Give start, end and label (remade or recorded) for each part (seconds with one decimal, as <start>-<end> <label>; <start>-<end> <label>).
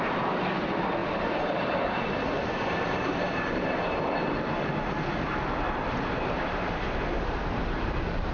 0.0-1.0 recorded; 1.0-4.0 remade; 4.0-8.3 recorded